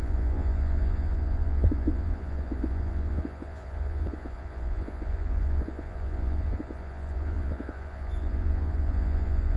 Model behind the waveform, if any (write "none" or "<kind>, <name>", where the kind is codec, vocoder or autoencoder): vocoder, Vocos